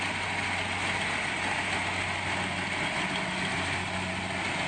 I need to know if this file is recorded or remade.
recorded